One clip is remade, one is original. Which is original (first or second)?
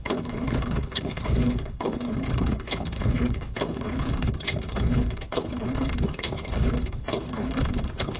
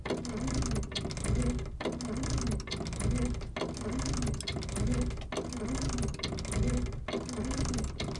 second